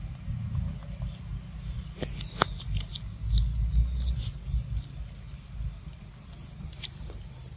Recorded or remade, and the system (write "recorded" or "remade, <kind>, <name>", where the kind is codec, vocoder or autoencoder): recorded